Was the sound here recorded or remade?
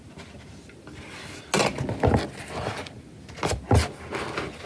recorded